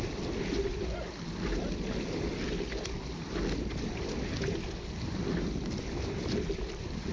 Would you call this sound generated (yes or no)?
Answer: no